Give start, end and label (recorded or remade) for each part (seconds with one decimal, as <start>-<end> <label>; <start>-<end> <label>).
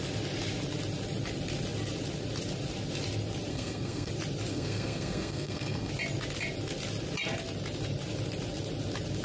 0.0-3.5 recorded; 3.5-4.1 remade; 4.1-4.5 recorded; 4.5-5.9 remade; 5.9-9.2 recorded